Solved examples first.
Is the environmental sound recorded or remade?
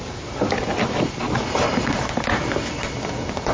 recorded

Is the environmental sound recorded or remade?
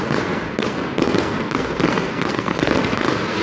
remade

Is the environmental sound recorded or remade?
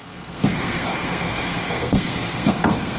remade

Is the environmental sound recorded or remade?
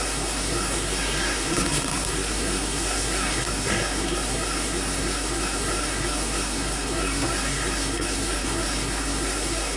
remade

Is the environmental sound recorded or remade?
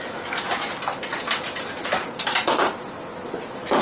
recorded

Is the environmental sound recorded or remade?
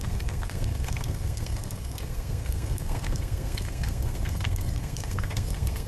remade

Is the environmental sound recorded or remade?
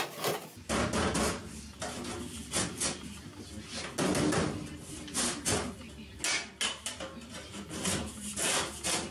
recorded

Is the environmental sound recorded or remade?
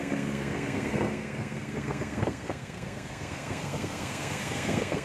remade